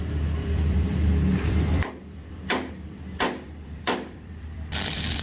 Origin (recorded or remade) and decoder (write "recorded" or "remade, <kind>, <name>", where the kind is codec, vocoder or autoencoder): remade, vocoder, BigVGAN v2